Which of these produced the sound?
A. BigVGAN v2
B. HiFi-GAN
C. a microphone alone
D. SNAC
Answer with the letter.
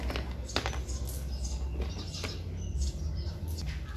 C